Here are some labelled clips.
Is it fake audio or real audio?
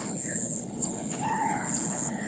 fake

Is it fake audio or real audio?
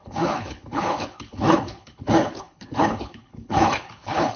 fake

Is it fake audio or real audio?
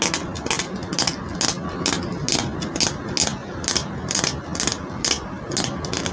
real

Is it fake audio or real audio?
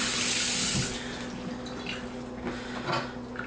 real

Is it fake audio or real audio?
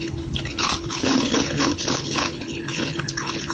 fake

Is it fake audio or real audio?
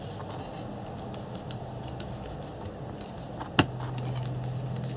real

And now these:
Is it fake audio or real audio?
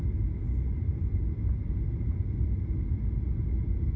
real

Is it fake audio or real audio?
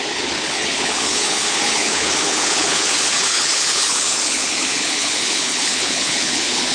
fake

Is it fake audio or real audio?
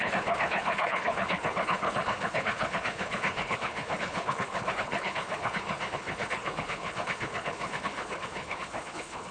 fake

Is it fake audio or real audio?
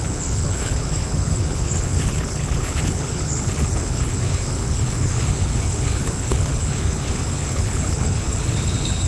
fake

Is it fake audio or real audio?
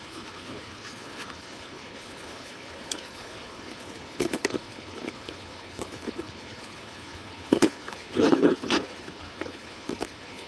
fake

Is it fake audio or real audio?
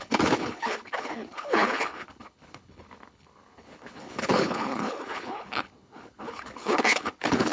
fake